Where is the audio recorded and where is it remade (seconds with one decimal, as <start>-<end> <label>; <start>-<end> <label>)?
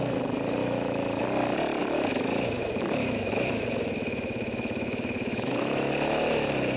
0.0-0.6 recorded; 0.6-1.2 remade; 1.2-1.8 recorded; 1.8-5.9 remade; 5.9-6.8 recorded